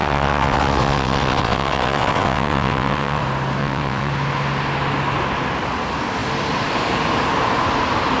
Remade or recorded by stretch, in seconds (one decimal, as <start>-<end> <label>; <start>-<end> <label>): 0.0-3.2 remade; 3.2-3.6 recorded; 3.6-4.1 remade; 4.1-8.2 recorded